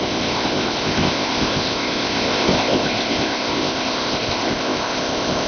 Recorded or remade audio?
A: remade